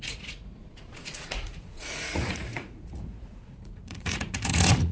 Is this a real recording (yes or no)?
no